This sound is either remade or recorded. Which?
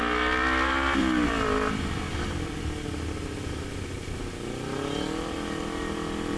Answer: recorded